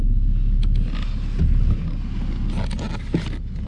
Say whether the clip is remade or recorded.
recorded